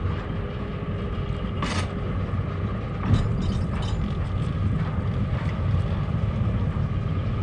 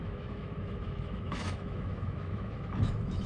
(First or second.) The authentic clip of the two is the first